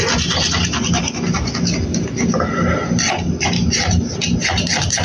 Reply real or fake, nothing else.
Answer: real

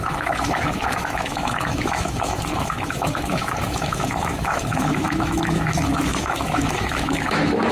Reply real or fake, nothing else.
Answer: fake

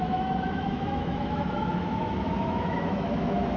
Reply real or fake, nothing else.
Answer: fake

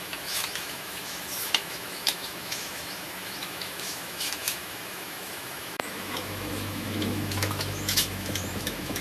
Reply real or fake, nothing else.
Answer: fake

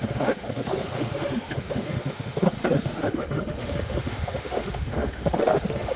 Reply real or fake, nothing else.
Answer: fake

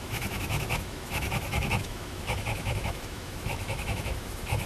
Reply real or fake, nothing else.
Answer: fake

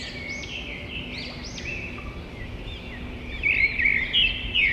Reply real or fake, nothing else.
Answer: real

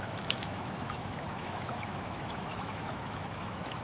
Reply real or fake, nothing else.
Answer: fake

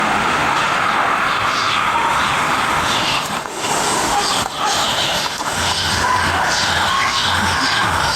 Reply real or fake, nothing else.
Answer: fake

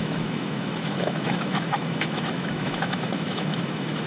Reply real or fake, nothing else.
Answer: fake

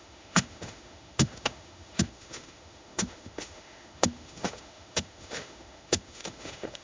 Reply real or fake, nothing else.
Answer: fake